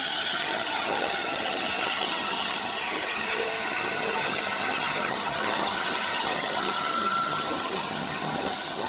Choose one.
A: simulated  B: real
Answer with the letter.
A